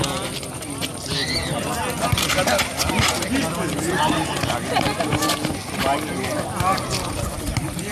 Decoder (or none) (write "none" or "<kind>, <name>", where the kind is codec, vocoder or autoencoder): none